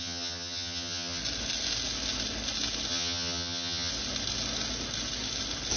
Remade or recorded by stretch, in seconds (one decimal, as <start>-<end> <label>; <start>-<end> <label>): 0.0-1.2 remade; 1.2-2.9 recorded; 2.9-3.9 remade; 3.9-5.8 recorded